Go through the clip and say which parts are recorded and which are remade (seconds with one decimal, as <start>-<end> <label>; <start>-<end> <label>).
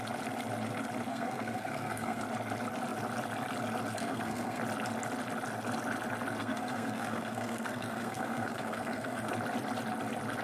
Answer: 0.0-1.1 recorded; 1.1-2.2 remade; 2.2-4.0 recorded; 4.0-4.6 remade; 4.6-6.4 recorded; 6.4-9.3 remade; 9.3-10.4 recorded